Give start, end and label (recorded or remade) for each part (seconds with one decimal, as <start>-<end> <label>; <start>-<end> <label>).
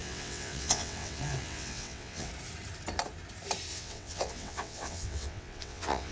0.0-2.3 remade; 2.3-3.7 recorded; 3.7-6.1 remade